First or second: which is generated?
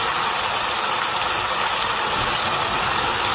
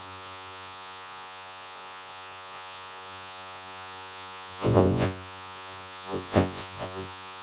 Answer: second